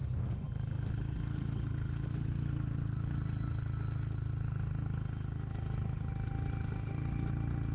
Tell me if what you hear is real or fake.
real